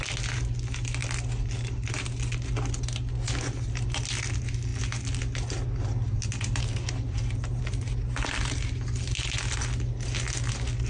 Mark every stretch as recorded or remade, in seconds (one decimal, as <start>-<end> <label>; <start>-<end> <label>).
0.0-10.9 recorded